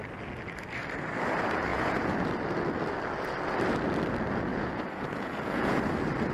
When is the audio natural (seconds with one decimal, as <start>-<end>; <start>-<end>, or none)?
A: 0.0-1.7; 2.3-4.5; 5.8-6.3